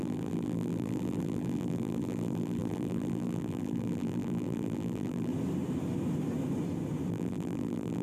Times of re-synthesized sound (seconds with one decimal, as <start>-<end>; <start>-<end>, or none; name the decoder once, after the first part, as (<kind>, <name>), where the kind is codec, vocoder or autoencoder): 0.0-5.3 (vocoder, BigVGAN v2); 7.1-8.0